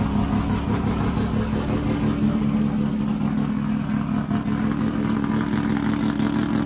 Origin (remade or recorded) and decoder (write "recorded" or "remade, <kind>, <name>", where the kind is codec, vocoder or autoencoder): recorded